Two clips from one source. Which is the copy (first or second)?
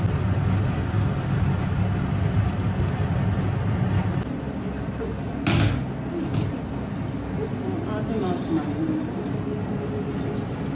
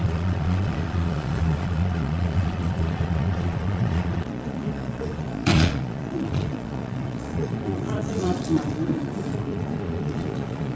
second